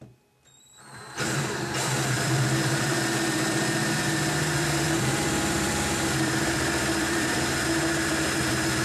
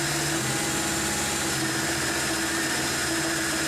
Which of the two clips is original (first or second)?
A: second